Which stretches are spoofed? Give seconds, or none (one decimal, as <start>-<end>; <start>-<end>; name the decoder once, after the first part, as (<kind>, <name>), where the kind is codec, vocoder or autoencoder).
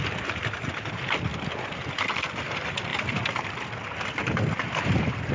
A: none